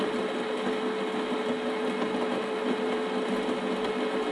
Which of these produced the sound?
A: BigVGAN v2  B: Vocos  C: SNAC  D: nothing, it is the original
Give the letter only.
D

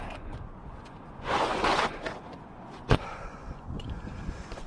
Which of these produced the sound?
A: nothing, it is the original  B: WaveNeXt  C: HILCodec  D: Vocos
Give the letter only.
D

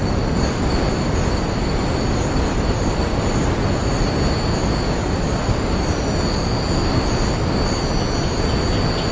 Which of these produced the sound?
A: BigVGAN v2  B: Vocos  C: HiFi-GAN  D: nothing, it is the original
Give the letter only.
D